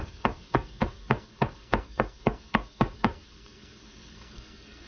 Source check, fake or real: fake